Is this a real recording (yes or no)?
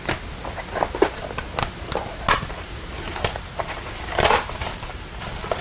yes